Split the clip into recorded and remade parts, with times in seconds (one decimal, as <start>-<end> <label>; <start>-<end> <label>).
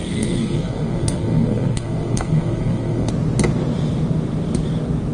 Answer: 0.0-3.1 remade; 3.1-5.1 recorded